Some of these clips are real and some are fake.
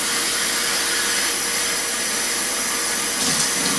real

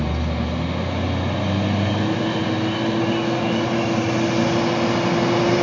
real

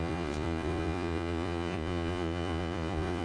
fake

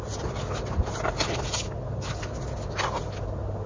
real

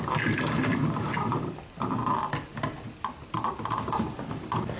real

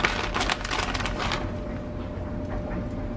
real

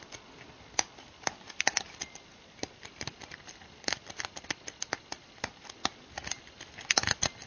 real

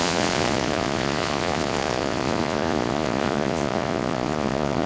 fake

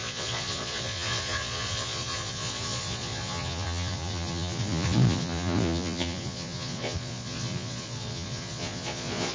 fake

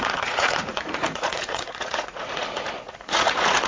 fake